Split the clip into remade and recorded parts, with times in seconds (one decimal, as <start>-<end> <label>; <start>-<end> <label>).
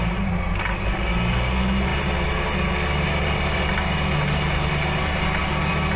0.0-6.0 recorded